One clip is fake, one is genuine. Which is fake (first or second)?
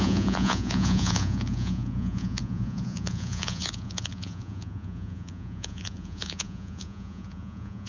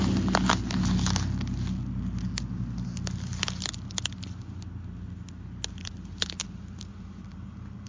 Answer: first